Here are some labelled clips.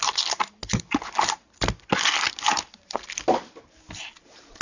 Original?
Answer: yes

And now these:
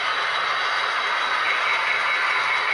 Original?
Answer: yes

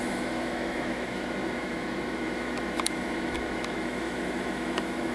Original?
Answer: no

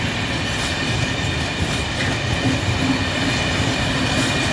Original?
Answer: yes